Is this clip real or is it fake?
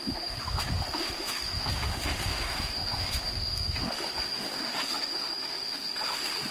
fake